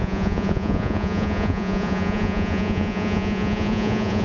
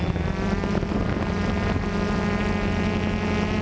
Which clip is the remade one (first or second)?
first